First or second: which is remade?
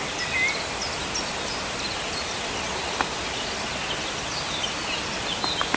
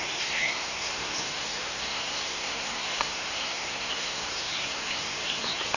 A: second